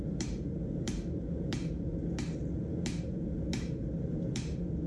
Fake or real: fake